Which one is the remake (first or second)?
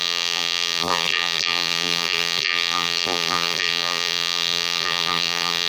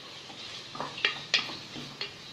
first